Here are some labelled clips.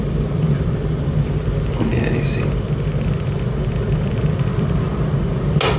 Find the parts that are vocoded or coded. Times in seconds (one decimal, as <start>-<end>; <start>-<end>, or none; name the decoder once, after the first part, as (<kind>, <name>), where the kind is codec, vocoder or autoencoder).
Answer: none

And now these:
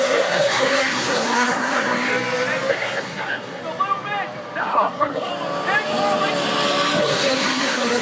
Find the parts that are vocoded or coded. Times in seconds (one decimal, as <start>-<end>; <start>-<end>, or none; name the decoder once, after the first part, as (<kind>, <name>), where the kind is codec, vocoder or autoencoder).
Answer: 0.0-2.1 (codec, SNAC); 2.7-3.6; 4.6-5.3; 7.0-8.0

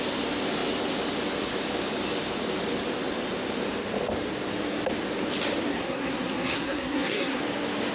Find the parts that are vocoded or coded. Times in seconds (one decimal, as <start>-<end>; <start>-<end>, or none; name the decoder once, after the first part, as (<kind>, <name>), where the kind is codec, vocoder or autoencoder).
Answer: 5.7-7.4 (codec, SNAC)

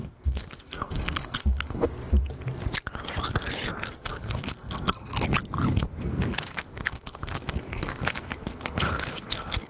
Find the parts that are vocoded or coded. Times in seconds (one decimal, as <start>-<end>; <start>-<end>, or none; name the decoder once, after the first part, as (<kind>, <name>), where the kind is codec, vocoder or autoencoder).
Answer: 0.0-1.8 (codec, SNAC); 3.9-5.1; 5.7-9.7

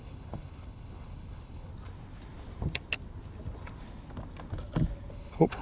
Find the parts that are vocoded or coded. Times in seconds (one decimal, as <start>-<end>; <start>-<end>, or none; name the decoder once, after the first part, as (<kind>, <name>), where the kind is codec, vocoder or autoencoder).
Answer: 0.0-1.7 (codec, HILCodec); 5.1-5.6

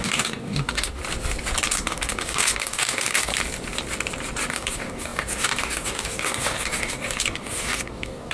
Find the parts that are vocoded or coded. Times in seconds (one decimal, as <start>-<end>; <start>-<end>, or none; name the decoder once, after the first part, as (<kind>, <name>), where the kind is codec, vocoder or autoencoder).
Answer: 0.0-1.0 (codec, DAC); 1.7-3.3; 4.5-8.3